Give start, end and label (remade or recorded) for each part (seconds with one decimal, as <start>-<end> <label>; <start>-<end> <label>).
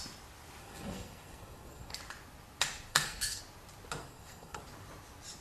0.0-0.6 recorded; 0.6-2.0 remade; 2.0-2.9 recorded; 2.9-3.4 remade; 3.4-4.0 recorded; 4.0-4.6 remade; 4.6-5.4 recorded